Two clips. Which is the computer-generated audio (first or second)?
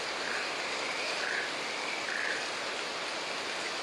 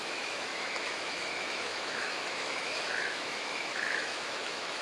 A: second